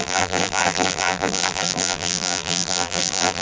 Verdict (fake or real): fake